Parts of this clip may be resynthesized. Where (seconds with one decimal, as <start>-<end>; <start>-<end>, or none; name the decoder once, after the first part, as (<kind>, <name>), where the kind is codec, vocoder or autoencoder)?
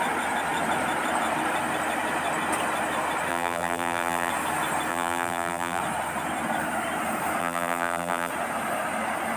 3.3-4.3 (vocoder, BigVGAN v2); 4.9-5.8; 7.4-8.3